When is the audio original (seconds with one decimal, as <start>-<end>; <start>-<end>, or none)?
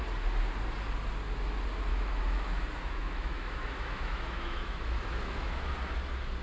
0.0-1.9; 5.7-6.4